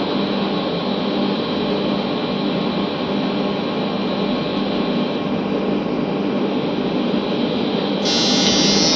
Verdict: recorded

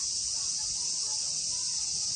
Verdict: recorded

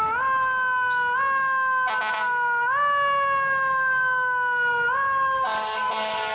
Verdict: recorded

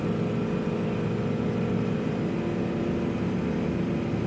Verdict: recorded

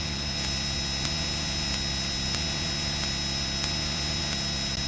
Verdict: recorded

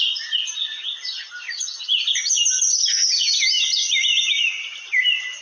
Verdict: recorded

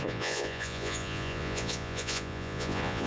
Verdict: remade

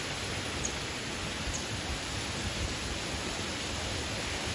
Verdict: recorded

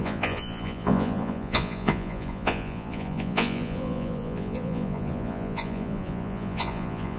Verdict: remade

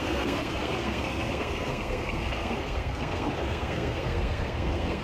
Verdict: remade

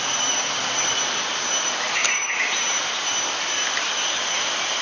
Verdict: recorded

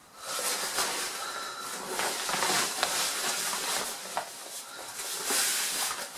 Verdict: recorded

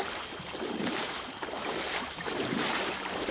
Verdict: remade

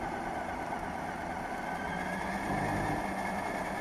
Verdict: recorded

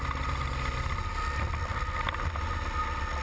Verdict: recorded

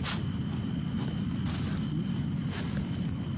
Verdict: recorded